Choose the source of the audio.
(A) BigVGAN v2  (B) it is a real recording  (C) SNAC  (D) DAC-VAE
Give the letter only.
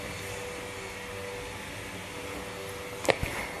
B